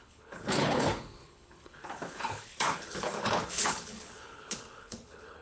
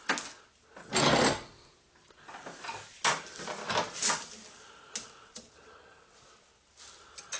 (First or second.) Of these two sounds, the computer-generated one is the first